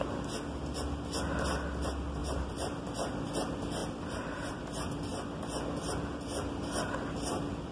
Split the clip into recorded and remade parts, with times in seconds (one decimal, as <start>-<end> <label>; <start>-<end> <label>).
0.0-2.2 recorded; 2.2-2.8 remade; 2.8-3.8 recorded; 3.8-4.6 remade; 4.6-7.7 recorded